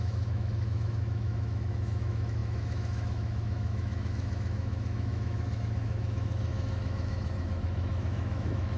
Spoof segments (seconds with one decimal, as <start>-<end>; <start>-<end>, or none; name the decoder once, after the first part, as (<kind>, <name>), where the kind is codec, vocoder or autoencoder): 0.0-8.8 (autoencoder, DAC-VAE)